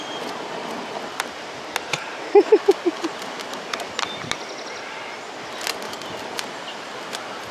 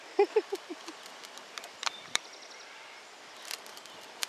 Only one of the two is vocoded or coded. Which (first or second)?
second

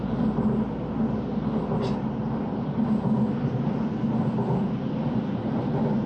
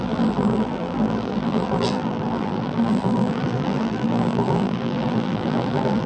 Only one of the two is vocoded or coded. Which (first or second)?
second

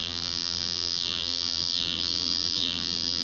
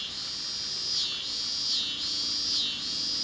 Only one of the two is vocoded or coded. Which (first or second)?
first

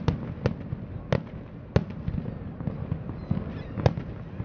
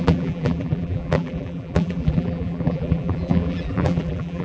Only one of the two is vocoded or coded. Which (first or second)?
second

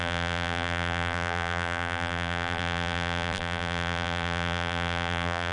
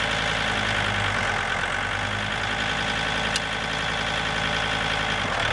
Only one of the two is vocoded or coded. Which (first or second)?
first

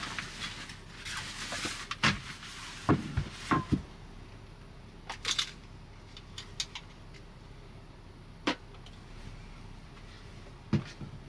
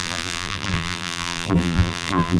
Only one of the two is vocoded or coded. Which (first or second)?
second